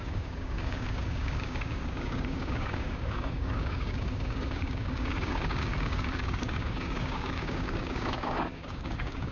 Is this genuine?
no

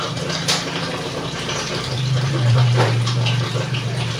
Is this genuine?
no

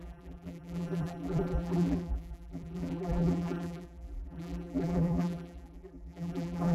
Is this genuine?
no